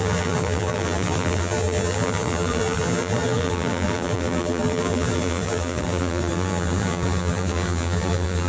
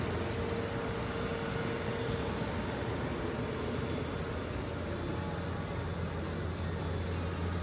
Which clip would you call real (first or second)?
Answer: second